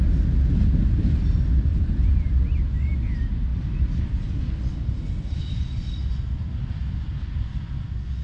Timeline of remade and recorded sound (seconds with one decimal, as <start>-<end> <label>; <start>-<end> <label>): 0.0-1.7 recorded; 1.7-2.3 remade; 2.3-8.2 recorded

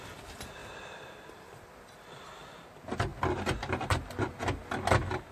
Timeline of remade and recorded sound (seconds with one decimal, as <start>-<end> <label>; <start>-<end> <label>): 0.0-5.3 recorded

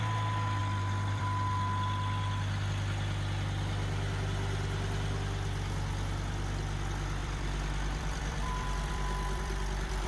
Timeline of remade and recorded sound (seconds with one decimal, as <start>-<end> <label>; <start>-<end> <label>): 0.0-0.6 recorded; 0.6-1.2 remade; 1.2-7.2 recorded; 7.2-10.1 remade

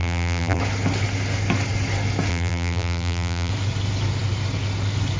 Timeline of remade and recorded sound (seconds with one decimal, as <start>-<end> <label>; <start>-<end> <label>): 0.0-0.6 remade; 0.6-2.3 recorded; 2.3-3.5 remade; 3.5-5.2 recorded

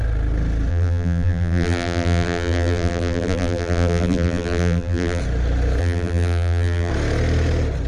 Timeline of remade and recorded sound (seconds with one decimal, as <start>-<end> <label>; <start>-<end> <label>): 0.0-0.7 recorded; 0.7-5.2 remade; 5.2-5.8 recorded; 5.8-6.9 remade; 6.9-7.9 recorded

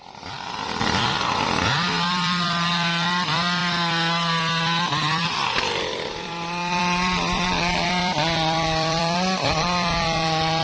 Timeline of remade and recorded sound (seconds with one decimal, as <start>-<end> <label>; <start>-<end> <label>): 0.0-3.6 remade; 3.6-5.5 recorded; 5.5-10.6 remade